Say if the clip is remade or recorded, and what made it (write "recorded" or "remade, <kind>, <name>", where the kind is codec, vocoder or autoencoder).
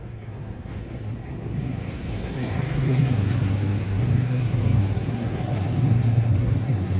remade, codec, SNAC